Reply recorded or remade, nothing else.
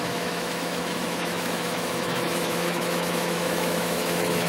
remade